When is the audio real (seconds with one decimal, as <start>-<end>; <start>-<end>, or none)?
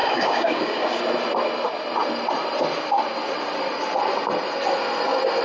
1.0-5.4